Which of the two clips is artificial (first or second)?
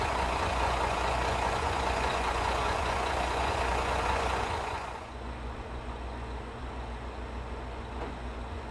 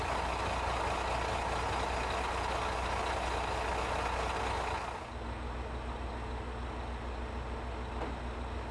first